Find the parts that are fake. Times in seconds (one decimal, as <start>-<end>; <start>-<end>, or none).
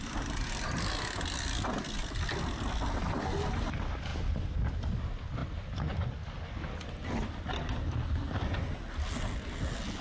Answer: none